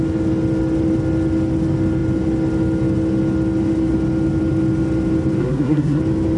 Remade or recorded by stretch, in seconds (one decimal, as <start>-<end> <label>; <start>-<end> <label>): 0.0-5.4 recorded; 5.4-6.0 remade; 6.0-6.4 recorded